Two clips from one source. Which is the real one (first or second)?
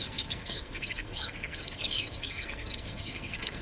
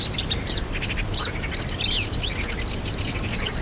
second